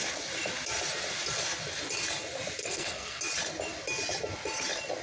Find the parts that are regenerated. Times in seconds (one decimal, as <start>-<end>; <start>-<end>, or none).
2.6-3.2